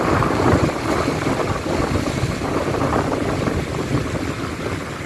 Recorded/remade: recorded